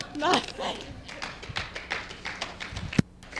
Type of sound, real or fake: real